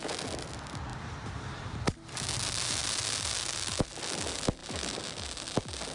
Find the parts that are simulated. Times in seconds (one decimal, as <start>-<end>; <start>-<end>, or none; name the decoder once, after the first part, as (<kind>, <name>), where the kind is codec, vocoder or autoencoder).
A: 0.9-1.8 (vocoder, BigVGAN v2)